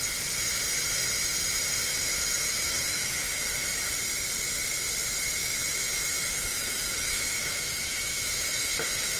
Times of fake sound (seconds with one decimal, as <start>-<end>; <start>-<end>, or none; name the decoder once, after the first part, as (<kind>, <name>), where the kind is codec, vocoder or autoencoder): 1.9-3.9 (autoencoder, DAC-VAE); 5.4-9.2

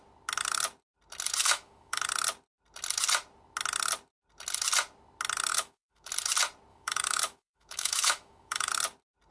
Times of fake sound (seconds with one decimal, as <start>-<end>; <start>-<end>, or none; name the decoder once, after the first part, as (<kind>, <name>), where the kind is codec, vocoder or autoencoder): 1.4-2.0 (autoencoder, DAC-VAE); 5.5-6.1; 6.7-8.7